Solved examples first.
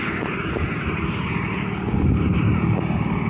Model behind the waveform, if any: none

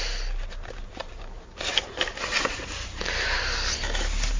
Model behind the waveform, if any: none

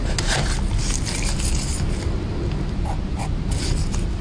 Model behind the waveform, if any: none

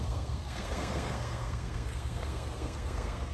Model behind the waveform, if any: codec, SNAC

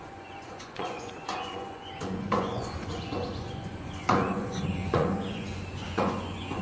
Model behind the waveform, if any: vocoder, Vocos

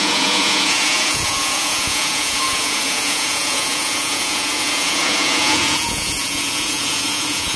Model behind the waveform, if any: vocoder, Vocos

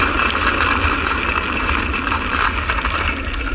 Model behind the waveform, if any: none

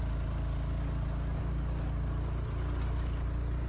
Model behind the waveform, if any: none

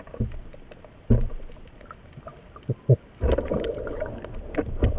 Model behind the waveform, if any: none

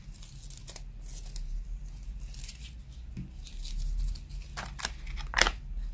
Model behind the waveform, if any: none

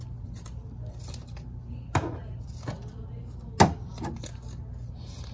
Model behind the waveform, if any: none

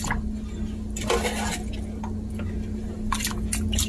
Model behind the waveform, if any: none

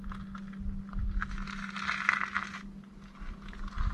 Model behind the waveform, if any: none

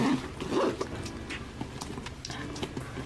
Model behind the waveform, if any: none